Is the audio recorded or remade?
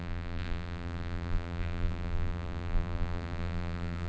remade